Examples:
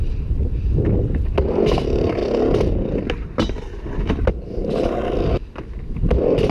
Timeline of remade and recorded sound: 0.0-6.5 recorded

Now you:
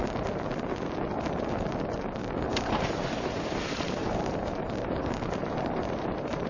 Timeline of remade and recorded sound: 0.0-2.5 recorded; 2.5-6.5 remade

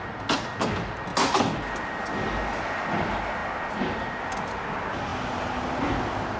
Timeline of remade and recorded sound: 0.0-6.4 recorded

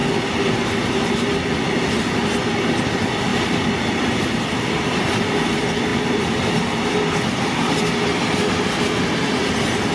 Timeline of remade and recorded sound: 0.0-9.9 recorded

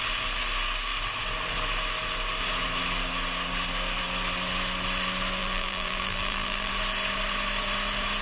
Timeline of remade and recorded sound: 0.0-5.4 recorded; 5.4-6.7 remade; 6.7-8.2 recorded

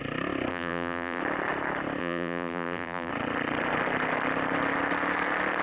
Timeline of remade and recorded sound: 0.0-0.5 recorded; 0.5-1.2 remade; 1.2-2.0 recorded; 2.0-3.1 remade; 3.1-5.6 recorded

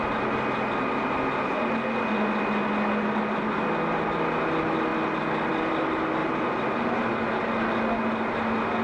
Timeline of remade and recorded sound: 0.0-6.2 recorded; 6.2-7.1 remade; 7.1-8.8 recorded

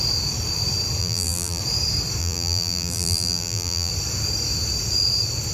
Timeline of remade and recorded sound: 0.0-1.0 recorded; 1.0-1.6 remade; 1.6-2.2 recorded; 2.2-3.9 remade; 3.9-5.5 recorded